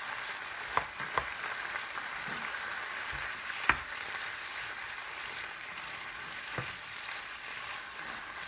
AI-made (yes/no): no